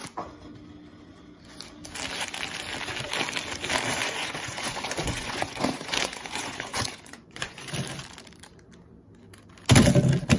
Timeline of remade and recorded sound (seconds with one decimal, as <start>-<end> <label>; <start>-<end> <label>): 0.0-4.0 recorded; 4.0-7.7 remade; 7.7-10.4 recorded